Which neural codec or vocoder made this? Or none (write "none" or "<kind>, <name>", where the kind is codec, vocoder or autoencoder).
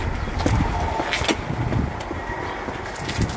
none